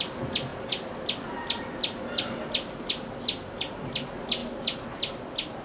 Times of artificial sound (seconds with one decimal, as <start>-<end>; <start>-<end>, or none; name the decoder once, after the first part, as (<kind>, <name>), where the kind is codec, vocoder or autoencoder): none